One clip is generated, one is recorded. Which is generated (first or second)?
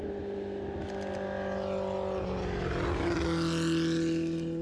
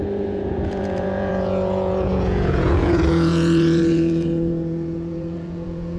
second